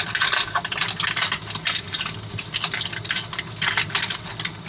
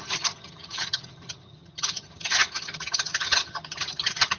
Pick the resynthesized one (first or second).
second